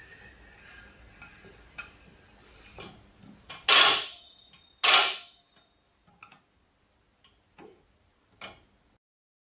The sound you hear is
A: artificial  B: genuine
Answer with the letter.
B